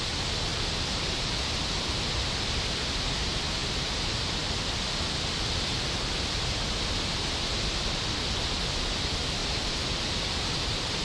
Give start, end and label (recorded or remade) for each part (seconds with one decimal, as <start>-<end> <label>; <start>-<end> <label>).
0.0-0.5 recorded; 0.5-2.3 remade; 2.3-3.6 recorded; 3.6-4.2 remade; 4.2-9.4 recorded; 9.4-11.0 remade